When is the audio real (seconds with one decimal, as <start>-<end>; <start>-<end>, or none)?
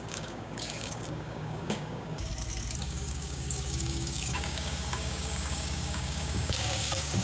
2.3-2.8